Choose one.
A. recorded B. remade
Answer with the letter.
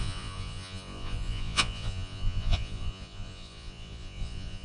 B